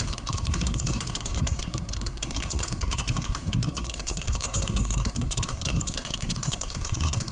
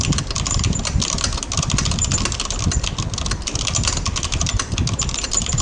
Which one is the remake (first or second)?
first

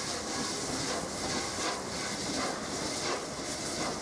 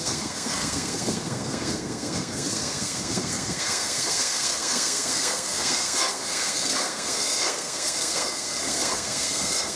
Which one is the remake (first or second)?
second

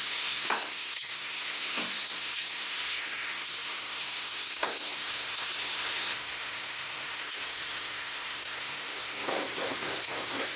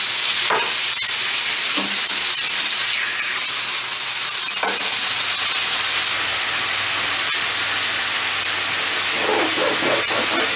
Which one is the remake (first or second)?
first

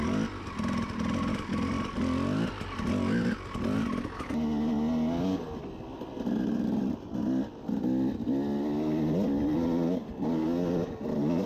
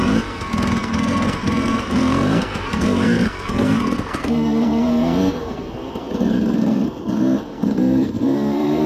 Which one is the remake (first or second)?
second